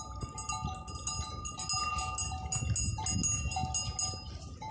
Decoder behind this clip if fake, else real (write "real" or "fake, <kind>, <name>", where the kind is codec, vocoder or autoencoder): real